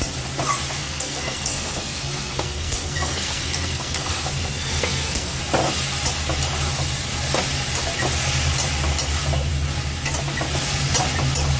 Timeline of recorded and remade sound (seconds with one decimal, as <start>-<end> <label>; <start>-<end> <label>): 0.0-0.8 recorded; 0.8-5.4 remade; 5.4-11.6 recorded